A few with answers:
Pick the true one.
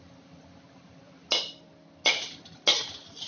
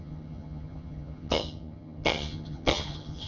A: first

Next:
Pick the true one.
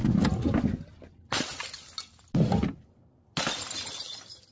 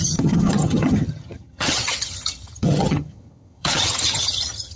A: first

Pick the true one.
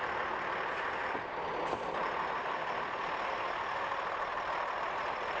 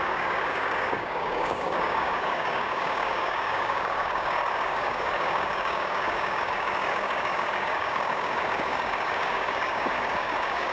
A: first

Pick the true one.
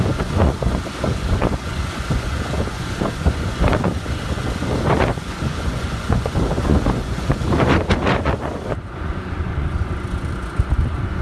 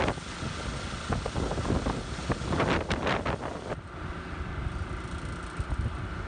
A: second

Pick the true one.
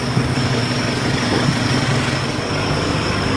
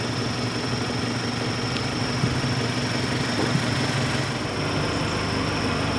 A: second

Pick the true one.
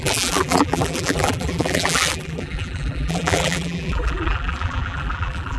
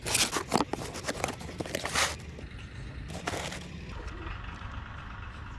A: second